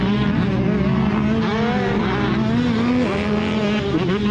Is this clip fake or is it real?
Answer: real